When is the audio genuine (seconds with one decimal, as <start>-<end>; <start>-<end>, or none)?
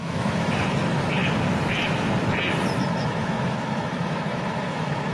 1.2-2.8